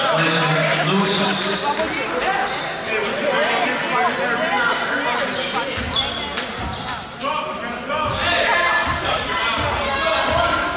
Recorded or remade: recorded